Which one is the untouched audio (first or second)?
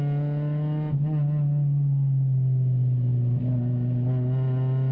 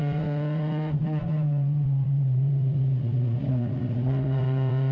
first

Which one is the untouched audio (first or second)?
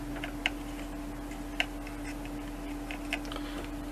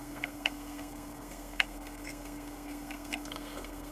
first